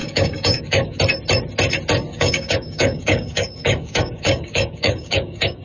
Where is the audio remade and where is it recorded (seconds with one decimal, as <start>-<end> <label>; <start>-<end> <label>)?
0.0-1.0 remade; 1.0-2.1 recorded; 2.1-5.6 remade